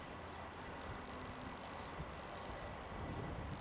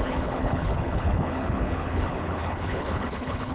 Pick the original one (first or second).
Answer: first